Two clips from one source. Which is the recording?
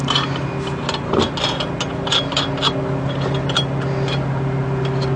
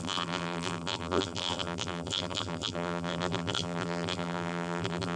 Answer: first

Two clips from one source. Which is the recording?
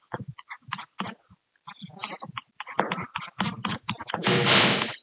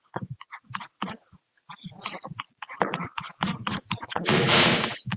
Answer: first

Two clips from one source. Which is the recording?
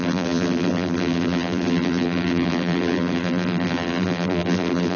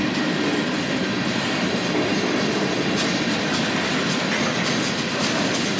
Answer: second